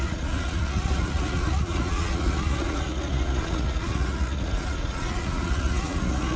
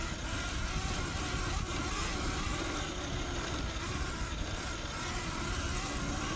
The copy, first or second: first